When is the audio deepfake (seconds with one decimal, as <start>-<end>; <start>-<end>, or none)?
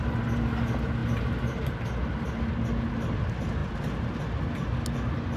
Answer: 3.6-4.2